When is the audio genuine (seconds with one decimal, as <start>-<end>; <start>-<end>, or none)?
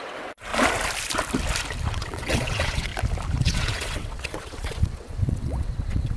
0.5-1.9; 2.9-3.4